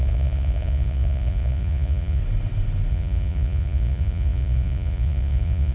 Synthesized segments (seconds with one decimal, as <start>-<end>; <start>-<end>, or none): 0.0-2.2; 2.9-5.7

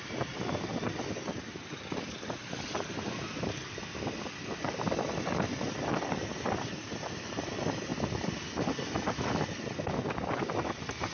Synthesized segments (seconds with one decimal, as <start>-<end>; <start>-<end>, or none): none

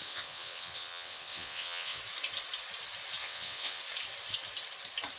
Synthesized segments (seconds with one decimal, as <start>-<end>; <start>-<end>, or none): 0.0-2.0; 3.2-3.8

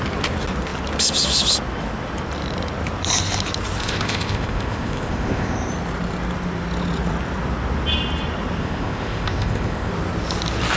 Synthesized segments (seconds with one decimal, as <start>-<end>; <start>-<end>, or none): 3.8-5.7; 8.6-9.9

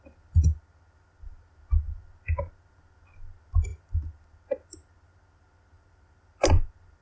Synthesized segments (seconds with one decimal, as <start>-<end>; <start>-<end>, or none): none